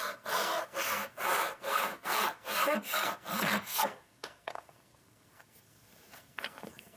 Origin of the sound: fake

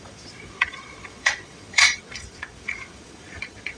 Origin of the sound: fake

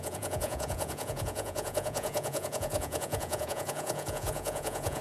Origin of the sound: fake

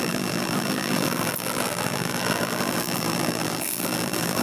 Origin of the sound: fake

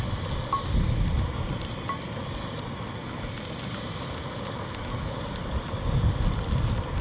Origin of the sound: real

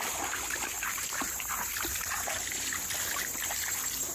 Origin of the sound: real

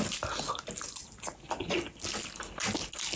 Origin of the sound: real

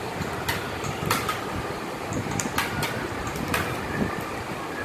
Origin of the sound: real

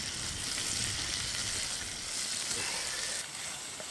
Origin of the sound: real